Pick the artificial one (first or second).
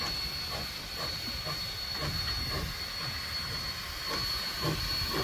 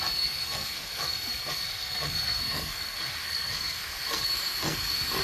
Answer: second